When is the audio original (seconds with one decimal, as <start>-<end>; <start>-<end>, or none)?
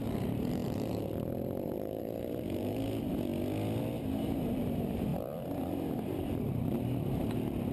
3.3-3.8; 5.1-6.0